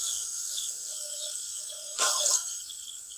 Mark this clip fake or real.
fake